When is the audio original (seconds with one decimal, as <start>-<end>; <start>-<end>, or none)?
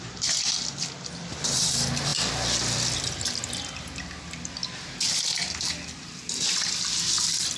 0.0-7.6